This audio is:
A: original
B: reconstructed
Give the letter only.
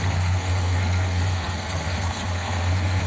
B